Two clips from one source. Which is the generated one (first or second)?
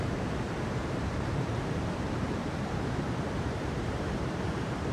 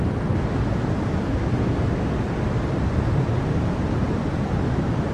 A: first